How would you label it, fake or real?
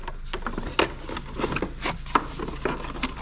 real